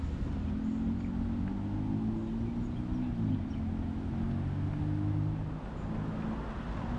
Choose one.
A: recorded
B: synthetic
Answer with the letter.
A